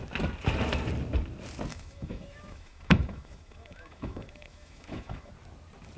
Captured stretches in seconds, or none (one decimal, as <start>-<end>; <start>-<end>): 0.0-1.7; 5.3-6.0